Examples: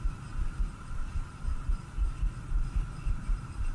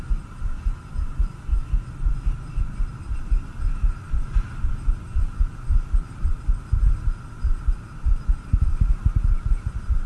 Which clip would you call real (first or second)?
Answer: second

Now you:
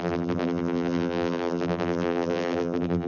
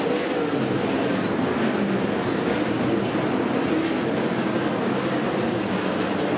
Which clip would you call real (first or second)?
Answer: second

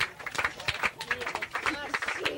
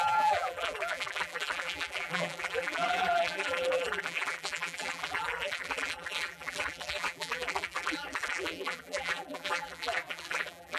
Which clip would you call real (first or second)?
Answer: first